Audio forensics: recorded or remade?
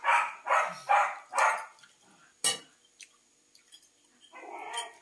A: recorded